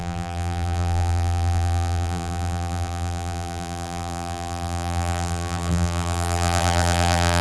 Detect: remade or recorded remade